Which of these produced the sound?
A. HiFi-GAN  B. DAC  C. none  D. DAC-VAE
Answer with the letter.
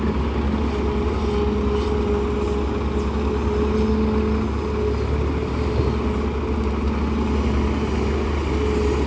C